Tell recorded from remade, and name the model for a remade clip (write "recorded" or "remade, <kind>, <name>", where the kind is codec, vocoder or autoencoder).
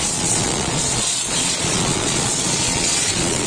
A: remade, vocoder, Vocos